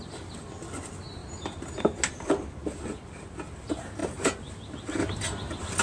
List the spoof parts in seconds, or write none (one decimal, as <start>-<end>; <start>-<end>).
none